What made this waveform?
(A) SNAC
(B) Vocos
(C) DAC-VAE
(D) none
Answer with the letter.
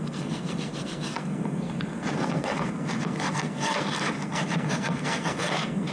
A